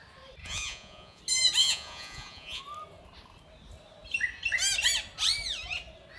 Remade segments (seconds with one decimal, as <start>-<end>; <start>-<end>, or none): 0.4-1.2; 1.6-2.6